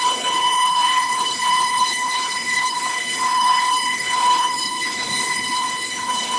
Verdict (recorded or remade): remade